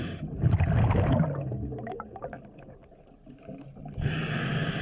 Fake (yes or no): no